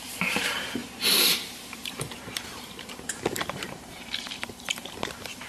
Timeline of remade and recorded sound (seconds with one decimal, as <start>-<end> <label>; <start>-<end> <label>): 0.0-5.5 remade